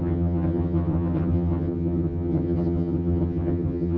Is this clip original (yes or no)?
no